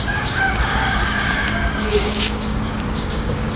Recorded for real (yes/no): no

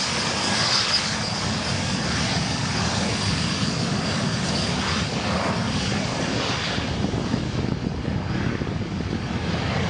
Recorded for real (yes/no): no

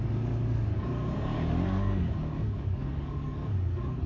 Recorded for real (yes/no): no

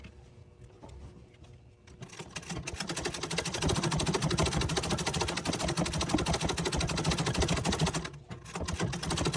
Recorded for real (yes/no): yes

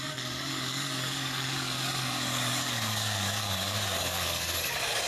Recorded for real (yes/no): no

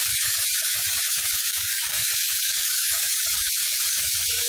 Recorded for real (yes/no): no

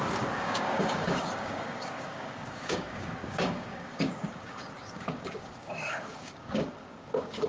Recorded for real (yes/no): no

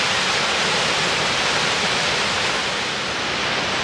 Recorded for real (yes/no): yes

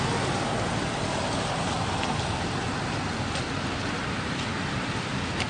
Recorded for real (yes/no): yes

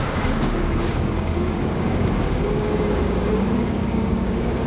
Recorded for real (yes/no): no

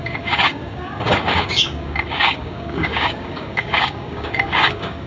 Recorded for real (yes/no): no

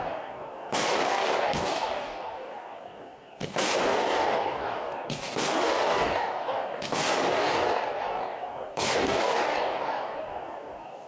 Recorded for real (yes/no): no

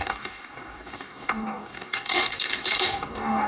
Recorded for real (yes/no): no